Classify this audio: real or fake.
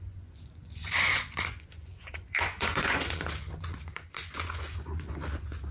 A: fake